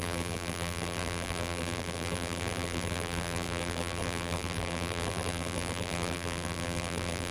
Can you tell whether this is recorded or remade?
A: remade